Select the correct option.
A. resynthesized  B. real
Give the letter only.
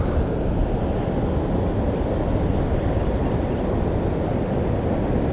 B